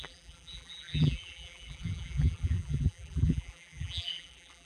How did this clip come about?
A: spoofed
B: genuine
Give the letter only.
A